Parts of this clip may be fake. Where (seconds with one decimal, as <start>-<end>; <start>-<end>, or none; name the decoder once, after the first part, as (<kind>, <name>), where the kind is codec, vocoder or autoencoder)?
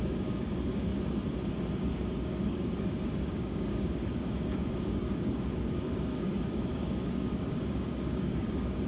0.0-0.9 (codec, DAC); 1.9-8.9